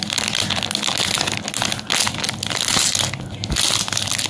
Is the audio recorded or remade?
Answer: recorded